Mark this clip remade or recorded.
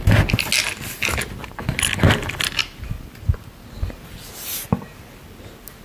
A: recorded